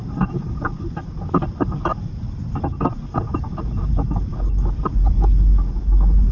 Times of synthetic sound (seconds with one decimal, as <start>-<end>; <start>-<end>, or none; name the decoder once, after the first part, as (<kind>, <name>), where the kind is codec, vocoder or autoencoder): 0.0-1.1 (vocoder, BigVGAN v2)